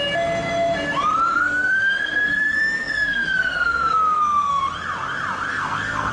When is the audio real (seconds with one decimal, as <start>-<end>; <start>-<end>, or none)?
0.0-1.3; 4.6-5.5